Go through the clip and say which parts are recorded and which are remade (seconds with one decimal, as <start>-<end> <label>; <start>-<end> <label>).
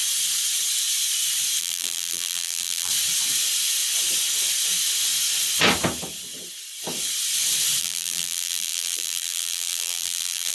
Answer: 0.0-1.6 recorded; 1.6-2.9 remade; 2.9-7.8 recorded; 7.8-10.5 remade